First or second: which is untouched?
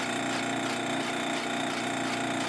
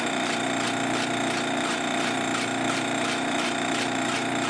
first